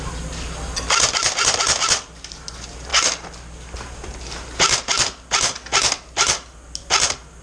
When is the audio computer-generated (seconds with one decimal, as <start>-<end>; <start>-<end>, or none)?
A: none